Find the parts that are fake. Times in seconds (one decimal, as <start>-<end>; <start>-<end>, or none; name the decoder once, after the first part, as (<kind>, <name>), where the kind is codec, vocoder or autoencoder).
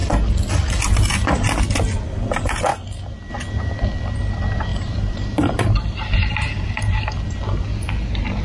4.7-6.8 (vocoder, BigVGAN v2)